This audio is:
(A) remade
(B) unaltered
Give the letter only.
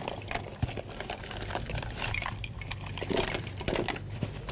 B